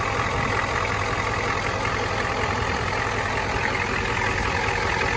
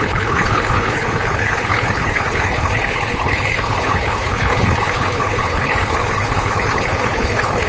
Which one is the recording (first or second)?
first